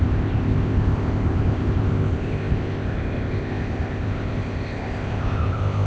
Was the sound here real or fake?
fake